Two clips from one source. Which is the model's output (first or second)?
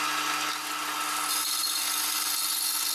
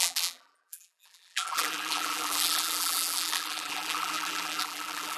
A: second